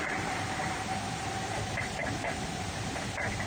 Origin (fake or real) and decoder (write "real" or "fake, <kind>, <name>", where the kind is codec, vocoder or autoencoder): fake, vocoder, BigVGAN v2